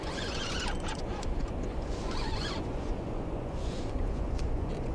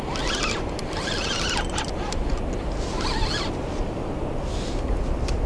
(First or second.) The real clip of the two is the second